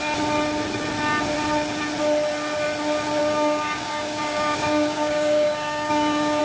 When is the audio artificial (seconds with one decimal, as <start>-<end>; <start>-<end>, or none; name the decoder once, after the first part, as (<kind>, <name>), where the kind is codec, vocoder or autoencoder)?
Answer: 3.2-6.4 (codec, DAC)